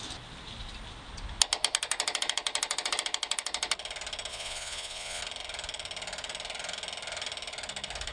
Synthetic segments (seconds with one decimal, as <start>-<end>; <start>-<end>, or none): 4.3-5.2